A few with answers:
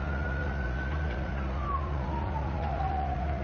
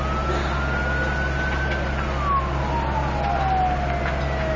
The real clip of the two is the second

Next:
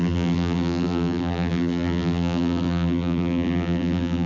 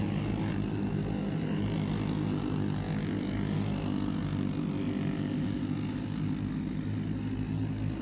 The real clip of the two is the second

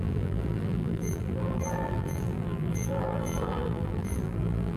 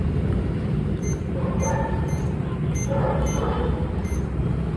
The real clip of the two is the second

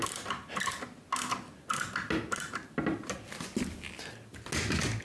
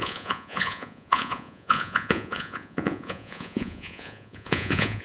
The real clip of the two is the first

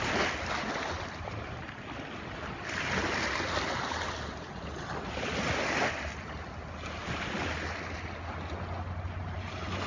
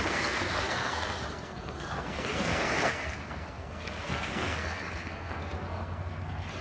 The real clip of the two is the first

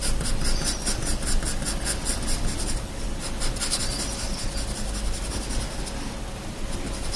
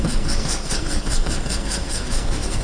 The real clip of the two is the first